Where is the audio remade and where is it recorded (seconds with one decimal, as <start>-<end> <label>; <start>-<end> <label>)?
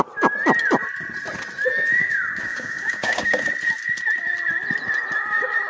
0.0-2.0 recorded; 2.0-3.4 remade; 3.4-5.7 recorded